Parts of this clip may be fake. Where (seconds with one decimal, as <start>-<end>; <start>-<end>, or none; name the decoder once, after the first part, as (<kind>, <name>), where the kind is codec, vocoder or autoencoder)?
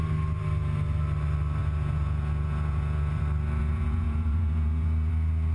1.6-3.2 (vocoder, Vocos); 3.6-5.1